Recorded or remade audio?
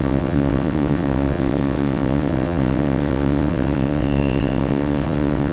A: remade